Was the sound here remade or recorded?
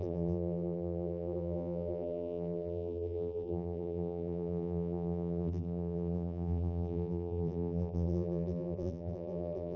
remade